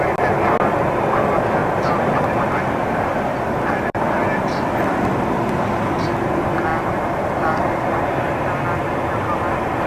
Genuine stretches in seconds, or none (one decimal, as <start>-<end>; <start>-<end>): 0.0-1.6; 2.1-3.1; 4.1-6.7; 8.4-9.9